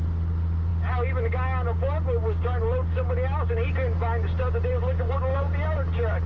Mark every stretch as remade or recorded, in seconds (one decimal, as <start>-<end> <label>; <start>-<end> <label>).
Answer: 0.0-6.3 recorded